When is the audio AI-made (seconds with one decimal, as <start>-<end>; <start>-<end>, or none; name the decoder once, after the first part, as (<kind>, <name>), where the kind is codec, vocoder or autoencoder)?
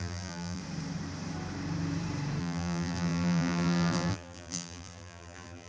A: 0.0-0.6 (vocoder, BigVGAN v2); 2.4-5.7